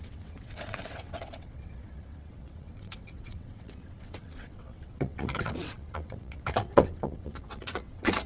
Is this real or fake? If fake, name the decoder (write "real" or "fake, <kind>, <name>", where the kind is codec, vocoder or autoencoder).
fake, vocoder, WaveNeXt